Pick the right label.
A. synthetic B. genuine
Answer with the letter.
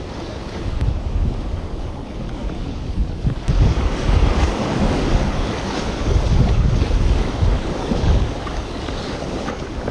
A